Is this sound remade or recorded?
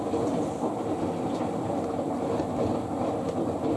recorded